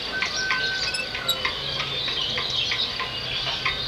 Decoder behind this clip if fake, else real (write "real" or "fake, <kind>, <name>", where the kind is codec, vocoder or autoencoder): real